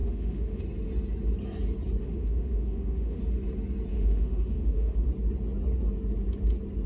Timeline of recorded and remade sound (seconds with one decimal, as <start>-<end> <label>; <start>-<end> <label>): 0.0-0.6 remade; 0.6-2.0 recorded; 2.0-3.2 remade; 3.2-3.9 recorded; 3.9-5.1 remade; 5.1-6.9 recorded